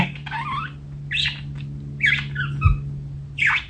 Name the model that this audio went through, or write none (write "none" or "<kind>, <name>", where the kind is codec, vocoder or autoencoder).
none